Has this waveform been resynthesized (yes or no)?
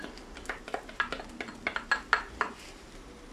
no